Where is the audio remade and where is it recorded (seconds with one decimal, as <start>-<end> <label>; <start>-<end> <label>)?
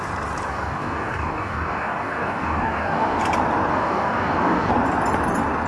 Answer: 0.0-0.5 recorded; 0.5-3.2 remade; 3.2-3.7 recorded; 3.7-4.7 remade; 4.7-5.7 recorded